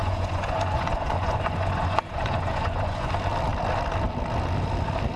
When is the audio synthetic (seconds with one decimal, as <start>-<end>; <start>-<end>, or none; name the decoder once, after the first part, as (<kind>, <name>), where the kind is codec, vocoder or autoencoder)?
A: 0.0-3.1 (vocoder, Vocos)